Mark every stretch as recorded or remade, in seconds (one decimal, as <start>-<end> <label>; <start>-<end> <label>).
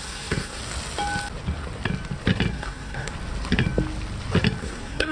0.0-0.6 remade; 0.6-2.5 recorded; 2.5-3.1 remade; 3.1-4.6 recorded; 4.6-5.1 remade